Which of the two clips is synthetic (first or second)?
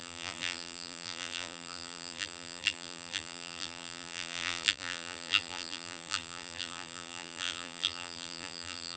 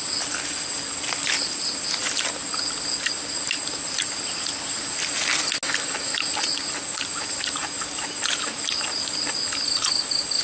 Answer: first